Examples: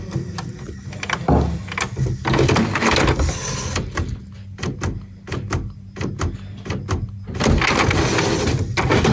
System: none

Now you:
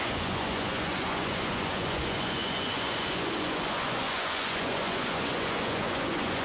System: vocoder, Vocos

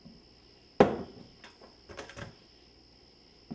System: none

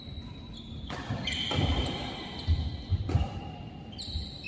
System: none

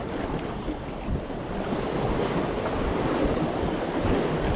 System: none